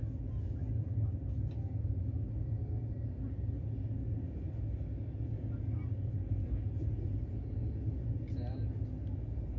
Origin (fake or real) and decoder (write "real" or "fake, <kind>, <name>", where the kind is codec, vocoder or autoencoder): real